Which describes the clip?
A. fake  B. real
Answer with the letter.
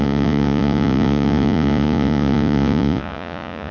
A